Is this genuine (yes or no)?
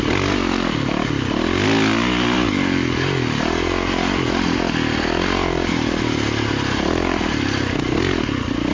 yes